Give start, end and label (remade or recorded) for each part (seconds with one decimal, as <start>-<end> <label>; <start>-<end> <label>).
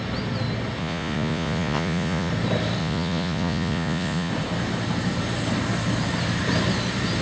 0.0-0.8 recorded; 0.8-2.3 remade; 2.3-2.8 recorded; 2.8-4.3 remade; 4.3-7.2 recorded